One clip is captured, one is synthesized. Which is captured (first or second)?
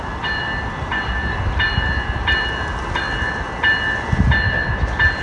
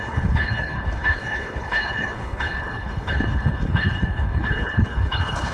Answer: first